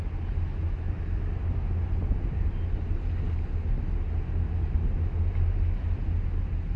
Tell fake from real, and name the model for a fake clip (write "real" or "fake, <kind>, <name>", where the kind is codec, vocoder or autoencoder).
real